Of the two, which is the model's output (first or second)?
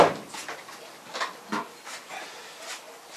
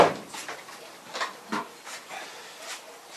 second